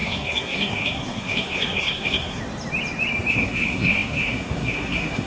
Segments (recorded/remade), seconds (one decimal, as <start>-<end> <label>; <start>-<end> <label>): 0.0-2.4 remade; 2.4-3.3 recorded; 3.3-5.3 remade